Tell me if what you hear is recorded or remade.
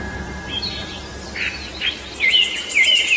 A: recorded